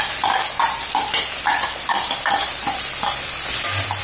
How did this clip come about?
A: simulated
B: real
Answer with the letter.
B